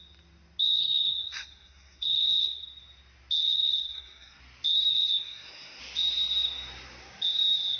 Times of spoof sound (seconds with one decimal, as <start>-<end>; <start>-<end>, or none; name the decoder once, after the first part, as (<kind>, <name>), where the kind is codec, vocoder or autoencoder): 0.8-2.6 (codec, SNAC); 3.4-4.4; 4.9-5.8